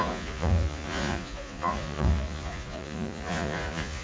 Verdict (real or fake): fake